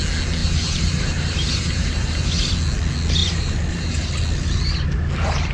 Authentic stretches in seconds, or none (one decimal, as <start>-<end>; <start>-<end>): 0.0-0.4; 2.5-3.2; 4.1-5.5